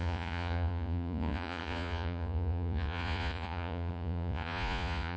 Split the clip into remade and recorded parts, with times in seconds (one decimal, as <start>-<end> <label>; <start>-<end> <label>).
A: 0.0-5.2 remade